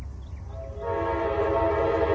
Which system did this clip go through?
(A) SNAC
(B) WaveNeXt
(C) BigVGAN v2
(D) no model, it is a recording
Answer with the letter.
D